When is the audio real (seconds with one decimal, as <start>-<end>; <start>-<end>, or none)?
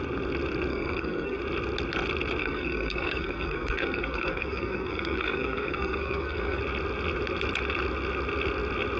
0.0-0.7; 1.4-2.4; 6.6-9.0